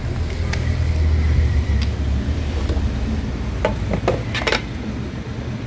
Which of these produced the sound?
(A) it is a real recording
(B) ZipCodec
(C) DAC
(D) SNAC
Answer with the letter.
A